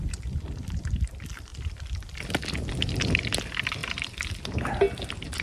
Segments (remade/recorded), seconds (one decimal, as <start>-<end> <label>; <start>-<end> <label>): 0.0-1.5 recorded; 1.5-3.3 remade; 3.3-3.8 recorded; 3.8-4.3 remade; 4.3-5.4 recorded

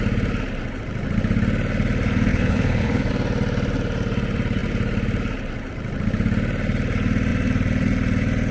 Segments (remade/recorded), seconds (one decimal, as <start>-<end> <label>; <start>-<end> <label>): 0.0-2.3 recorded; 2.3-3.1 remade; 3.1-8.5 recorded

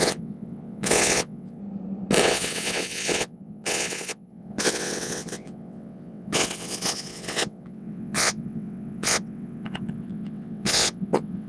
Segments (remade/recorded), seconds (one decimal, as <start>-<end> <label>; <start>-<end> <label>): 0.0-1.6 remade; 1.6-2.2 recorded; 2.2-11.5 remade

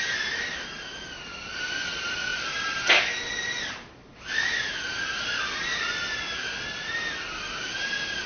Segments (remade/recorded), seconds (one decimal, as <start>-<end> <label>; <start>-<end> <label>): 0.0-8.3 recorded

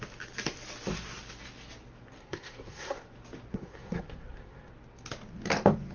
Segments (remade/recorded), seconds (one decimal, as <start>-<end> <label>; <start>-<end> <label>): 0.0-2.2 recorded; 2.2-3.1 remade; 3.1-3.5 recorded; 3.5-4.7 remade; 4.7-5.9 recorded

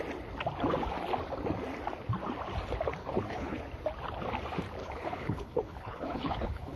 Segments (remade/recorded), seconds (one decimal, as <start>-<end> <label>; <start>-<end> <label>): 0.0-3.0 recorded; 3.0-3.6 remade; 3.6-4.8 recorded; 4.8-6.8 remade